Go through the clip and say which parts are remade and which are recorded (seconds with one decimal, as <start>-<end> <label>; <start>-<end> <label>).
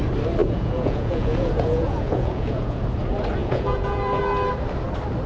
0.0-0.4 recorded; 0.4-2.8 remade; 2.8-3.4 recorded; 3.4-4.2 remade; 4.2-5.3 recorded